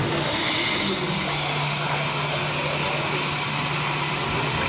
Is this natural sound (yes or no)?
yes